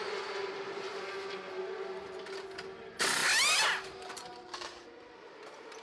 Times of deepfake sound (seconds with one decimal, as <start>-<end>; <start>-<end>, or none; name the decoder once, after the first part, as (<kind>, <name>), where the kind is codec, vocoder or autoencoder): none